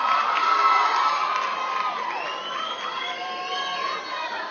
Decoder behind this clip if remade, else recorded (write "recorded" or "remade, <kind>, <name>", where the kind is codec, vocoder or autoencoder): recorded